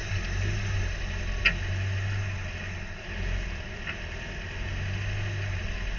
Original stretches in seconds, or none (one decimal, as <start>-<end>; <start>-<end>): 0.0-6.0